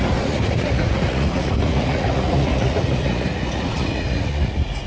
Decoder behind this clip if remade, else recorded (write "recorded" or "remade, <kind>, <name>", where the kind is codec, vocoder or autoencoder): remade, vocoder, Vocos